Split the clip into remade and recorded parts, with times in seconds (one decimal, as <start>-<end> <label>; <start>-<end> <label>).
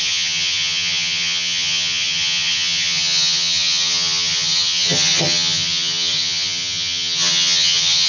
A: 0.0-8.1 remade